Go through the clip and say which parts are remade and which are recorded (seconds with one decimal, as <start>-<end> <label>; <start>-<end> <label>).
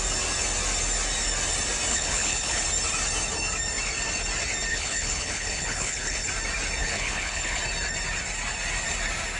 0.0-1.9 recorded; 1.9-2.6 remade; 2.6-4.7 recorded; 4.7-6.3 remade; 6.3-6.8 recorded; 6.8-7.6 remade; 7.6-9.4 recorded